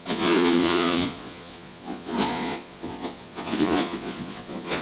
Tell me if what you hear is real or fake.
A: fake